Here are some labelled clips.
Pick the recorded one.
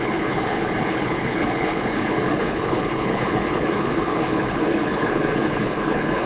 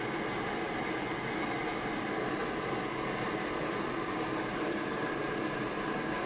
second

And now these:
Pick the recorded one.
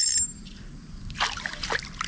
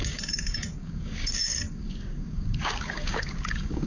first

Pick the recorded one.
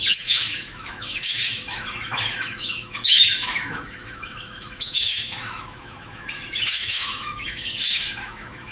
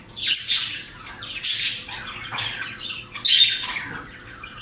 second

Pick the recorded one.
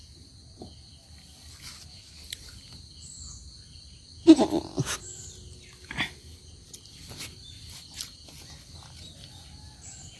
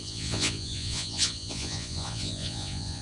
first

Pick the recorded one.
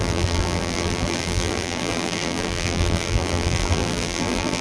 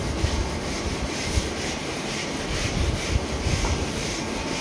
second